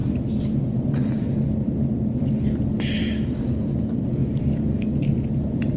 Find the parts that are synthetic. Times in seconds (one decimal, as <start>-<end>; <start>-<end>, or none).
none